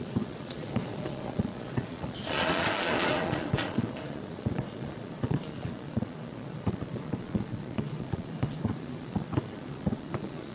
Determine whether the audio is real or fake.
fake